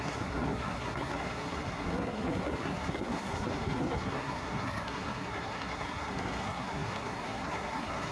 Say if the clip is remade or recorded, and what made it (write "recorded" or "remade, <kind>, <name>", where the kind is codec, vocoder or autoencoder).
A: remade, codec, SNAC